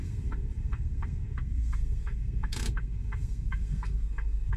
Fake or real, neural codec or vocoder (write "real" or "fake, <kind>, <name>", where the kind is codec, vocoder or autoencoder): fake, codec, SNAC